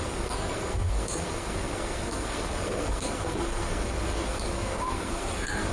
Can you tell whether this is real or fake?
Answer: fake